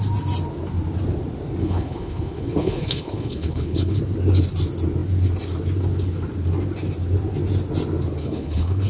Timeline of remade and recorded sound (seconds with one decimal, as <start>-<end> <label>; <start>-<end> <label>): 0.0-1.6 recorded; 1.6-4.0 remade; 4.0-8.2 recorded; 8.2-8.9 remade